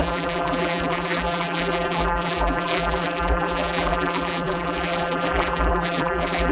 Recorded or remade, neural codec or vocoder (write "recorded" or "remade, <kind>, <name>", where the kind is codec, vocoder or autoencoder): remade, vocoder, BigVGAN v2